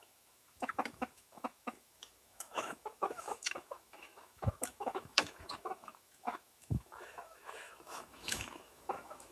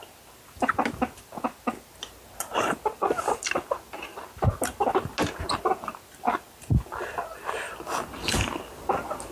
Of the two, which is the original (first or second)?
second